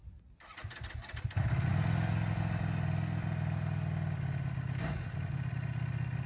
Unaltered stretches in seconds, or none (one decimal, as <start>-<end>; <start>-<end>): 0.0-6.3